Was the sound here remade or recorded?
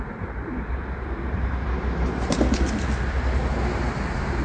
recorded